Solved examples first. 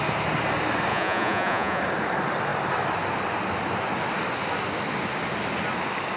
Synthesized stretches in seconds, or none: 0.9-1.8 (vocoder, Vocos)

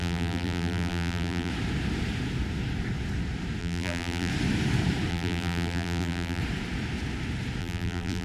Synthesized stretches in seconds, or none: 0.0-1.5 (vocoder, BigVGAN v2); 3.6-4.3; 5.1-6.4; 7.6-8.2

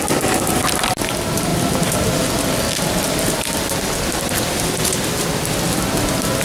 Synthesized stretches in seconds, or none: none

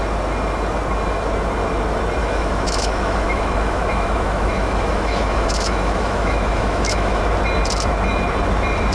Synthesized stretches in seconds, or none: 2.2-7.2 (autoencoder, DAC-VAE)

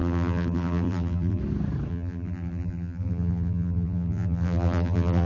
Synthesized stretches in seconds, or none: 0.0-1.4 (vocoder, BigVGAN v2); 1.9-5.3

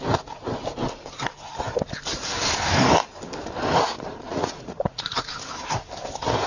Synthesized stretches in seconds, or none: 4.3-5.2 (vocoder, Vocos)

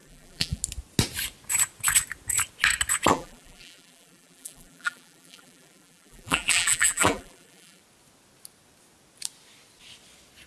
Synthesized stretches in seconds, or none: 0.0-0.6 (vocoder, BigVGAN v2); 3.1-7.8

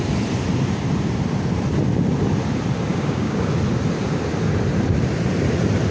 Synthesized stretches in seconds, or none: 2.9-3.5 (codec, DAC)